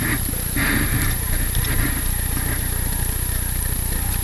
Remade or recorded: recorded